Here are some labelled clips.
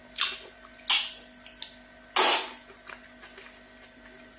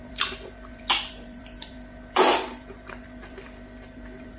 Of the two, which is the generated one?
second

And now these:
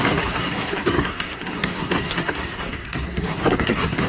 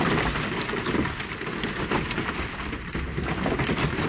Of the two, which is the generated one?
first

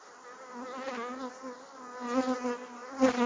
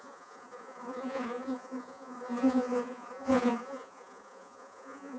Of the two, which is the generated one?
second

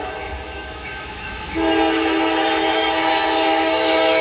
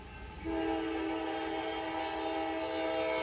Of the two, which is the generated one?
first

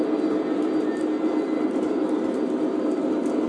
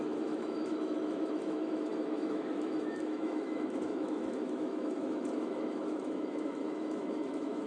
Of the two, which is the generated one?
second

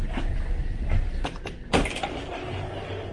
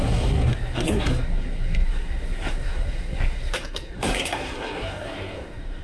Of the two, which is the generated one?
second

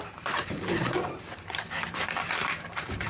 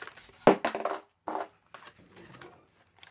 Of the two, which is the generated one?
first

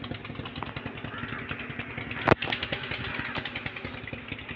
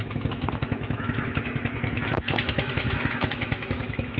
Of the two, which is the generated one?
second